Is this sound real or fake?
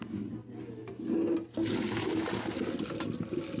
real